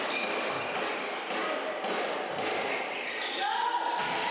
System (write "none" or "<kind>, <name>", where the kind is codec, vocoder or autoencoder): none